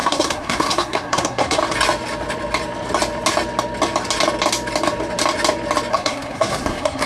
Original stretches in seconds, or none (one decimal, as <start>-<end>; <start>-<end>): 1.6-5.9